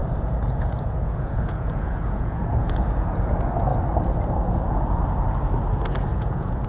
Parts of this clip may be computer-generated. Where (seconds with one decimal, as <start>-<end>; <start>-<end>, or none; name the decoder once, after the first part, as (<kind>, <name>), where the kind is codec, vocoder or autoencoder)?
0.0-3.3 (vocoder, Vocos); 6.1-6.7